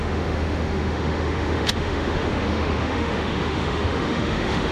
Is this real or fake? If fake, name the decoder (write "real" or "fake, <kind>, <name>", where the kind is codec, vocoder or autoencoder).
fake, autoencoder, DAC-VAE